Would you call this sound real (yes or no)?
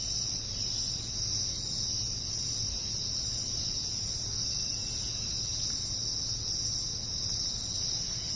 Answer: yes